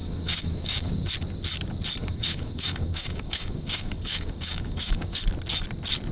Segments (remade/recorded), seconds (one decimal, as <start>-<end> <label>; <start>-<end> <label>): 0.0-1.1 remade; 1.1-2.0 recorded; 2.0-5.2 remade; 5.2-6.1 recorded